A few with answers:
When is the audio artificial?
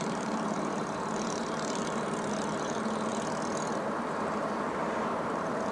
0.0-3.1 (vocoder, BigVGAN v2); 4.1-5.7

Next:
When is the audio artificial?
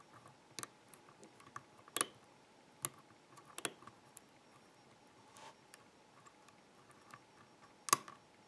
none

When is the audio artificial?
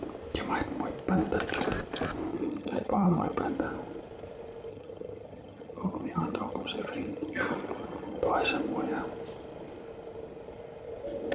2.3-3.5 (vocoder, HiFi-GAN); 4.7-8.2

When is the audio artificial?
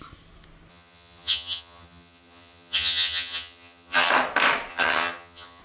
0.7-4.1 (vocoder, HiFi-GAN); 4.7-5.6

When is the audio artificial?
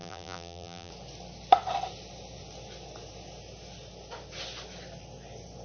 0.0-0.9 (vocoder, BigVGAN v2)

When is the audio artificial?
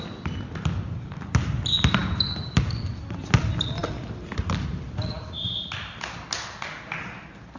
2.0-2.9 (vocoder, BigVGAN v2)